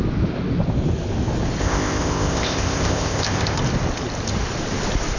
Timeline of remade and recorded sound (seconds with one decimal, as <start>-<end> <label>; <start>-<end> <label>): 0.0-1.6 recorded; 1.6-3.6 remade; 3.6-5.2 recorded